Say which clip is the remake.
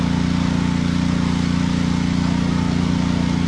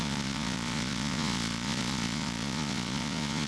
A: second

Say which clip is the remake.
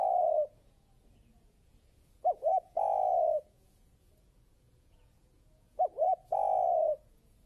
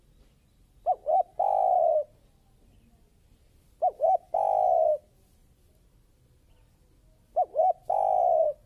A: first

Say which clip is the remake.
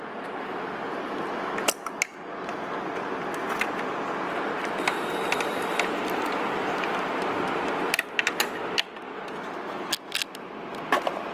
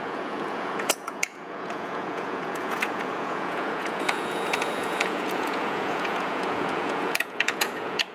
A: second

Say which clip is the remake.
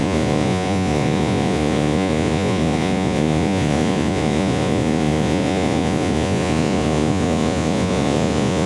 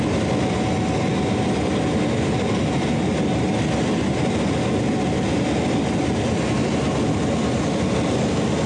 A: first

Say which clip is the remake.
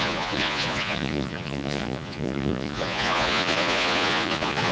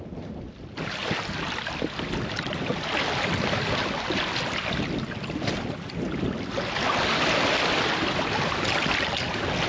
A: first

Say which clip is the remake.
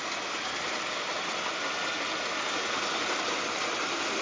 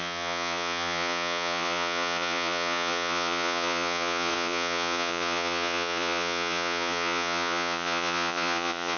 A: second